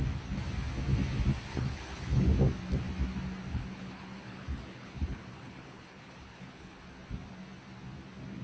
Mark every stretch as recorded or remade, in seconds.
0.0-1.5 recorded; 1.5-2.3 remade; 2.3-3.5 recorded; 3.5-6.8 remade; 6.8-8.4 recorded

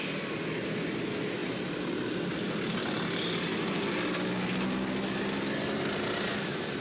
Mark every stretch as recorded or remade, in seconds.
0.0-6.8 recorded

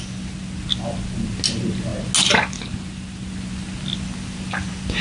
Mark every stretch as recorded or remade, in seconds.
0.0-5.0 recorded

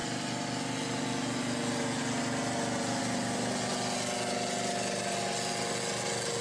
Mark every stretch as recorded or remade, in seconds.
0.0-6.4 recorded

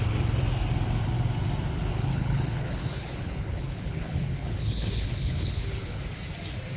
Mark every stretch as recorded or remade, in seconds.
0.0-1.9 recorded; 1.9-6.0 remade; 6.0-6.8 recorded

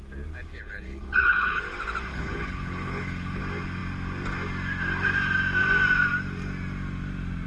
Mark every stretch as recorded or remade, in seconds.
0.0-0.5 recorded; 0.5-1.6 remade; 1.6-2.1 recorded; 2.1-3.4 remade; 3.4-7.5 recorded

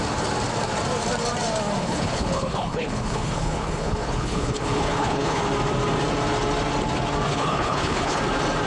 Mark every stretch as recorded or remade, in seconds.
0.0-1.8 recorded; 1.8-5.4 remade; 5.4-7.3 recorded; 7.3-8.2 remade; 8.2-8.7 recorded

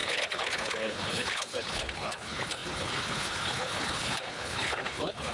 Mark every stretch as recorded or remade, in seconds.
0.0-5.3 remade